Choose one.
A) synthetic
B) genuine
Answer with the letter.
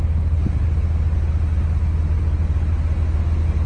B